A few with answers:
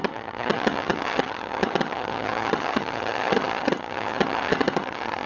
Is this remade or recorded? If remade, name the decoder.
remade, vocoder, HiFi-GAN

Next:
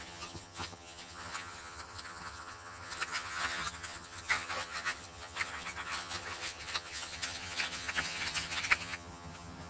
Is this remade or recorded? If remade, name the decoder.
remade, vocoder, HiFi-GAN